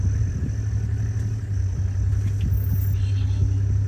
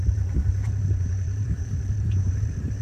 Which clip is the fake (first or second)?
second